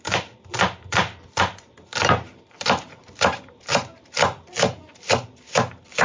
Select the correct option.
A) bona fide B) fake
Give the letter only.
A